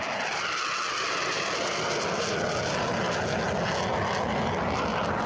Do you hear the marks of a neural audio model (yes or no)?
no